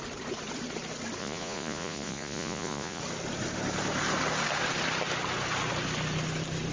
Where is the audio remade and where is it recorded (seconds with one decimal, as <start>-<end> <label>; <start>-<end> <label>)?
0.0-1.2 recorded; 1.2-3.0 remade; 3.0-6.7 recorded